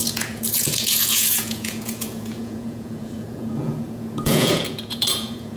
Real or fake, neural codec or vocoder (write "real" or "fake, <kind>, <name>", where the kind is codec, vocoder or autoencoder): fake, vocoder, Vocos